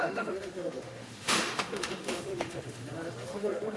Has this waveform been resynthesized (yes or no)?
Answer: yes